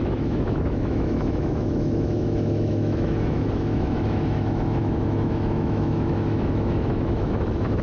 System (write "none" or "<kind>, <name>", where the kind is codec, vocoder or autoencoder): autoencoder, DAC-VAE